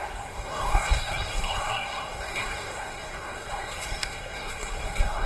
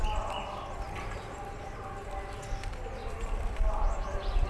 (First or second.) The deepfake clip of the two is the first